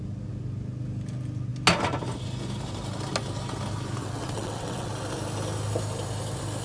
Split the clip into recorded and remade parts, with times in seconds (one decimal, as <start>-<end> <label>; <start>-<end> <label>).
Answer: 0.0-4.0 recorded; 4.0-4.9 remade; 4.9-6.6 recorded